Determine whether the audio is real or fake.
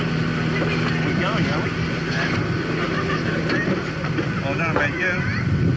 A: real